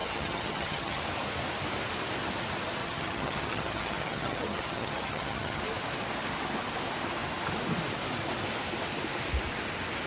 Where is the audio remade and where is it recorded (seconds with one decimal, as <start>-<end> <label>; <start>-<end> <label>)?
0.0-1.0 remade; 1.0-2.8 recorded; 2.8-5.6 remade; 5.6-10.1 recorded